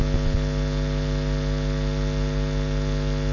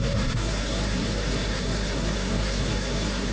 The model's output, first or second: second